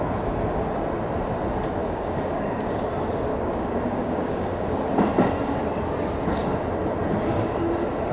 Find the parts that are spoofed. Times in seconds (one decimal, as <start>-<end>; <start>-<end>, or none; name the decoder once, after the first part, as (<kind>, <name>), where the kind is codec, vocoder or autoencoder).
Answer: 1.8-2.9 (codec, DAC); 3.3-4.7